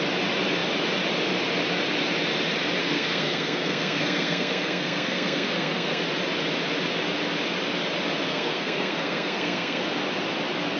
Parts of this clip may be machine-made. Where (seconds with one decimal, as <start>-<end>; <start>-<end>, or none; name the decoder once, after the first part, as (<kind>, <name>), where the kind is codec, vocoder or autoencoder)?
2.8-6.0 (codec, SNAC); 8.3-9.8